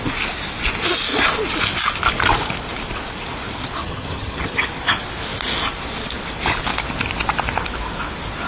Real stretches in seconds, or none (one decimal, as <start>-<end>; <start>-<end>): 0.0-3.8; 4.7-8.5